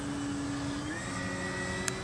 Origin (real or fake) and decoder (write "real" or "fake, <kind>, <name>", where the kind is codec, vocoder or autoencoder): real